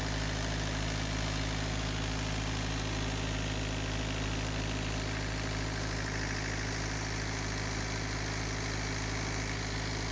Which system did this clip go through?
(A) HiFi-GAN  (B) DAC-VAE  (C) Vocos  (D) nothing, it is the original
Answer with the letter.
D